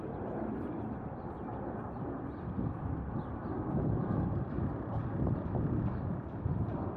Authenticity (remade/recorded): remade